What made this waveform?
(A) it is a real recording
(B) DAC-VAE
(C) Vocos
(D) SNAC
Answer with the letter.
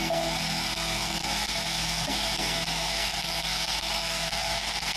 D